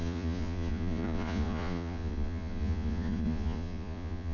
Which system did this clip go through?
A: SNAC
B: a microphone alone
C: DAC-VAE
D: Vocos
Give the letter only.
D